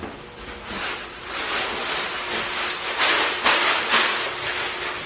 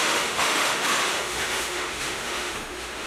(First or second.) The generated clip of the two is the second